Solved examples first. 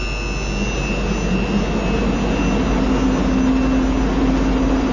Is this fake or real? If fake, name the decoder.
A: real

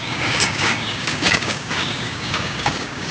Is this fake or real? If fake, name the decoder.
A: fake, codec, DAC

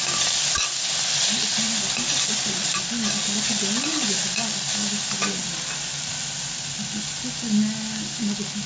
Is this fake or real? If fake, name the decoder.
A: real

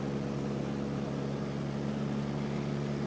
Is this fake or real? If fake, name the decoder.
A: real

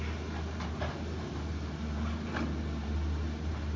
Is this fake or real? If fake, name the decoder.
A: real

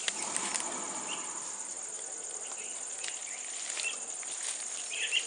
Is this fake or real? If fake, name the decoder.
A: real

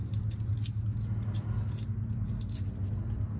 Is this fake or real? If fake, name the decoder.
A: real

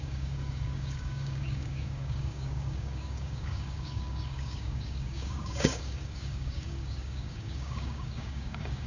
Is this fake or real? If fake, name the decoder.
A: fake, codec, DAC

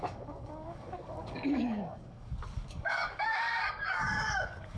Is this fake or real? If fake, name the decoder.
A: fake, codec, DAC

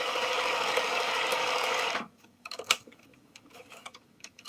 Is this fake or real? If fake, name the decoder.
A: fake, codec, DAC